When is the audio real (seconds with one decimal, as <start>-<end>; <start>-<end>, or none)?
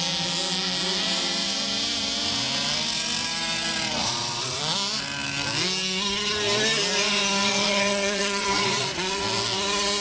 0.0-4.0; 4.6-7.4; 9.2-10.0